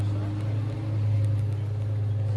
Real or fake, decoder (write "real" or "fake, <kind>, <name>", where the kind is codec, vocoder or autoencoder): real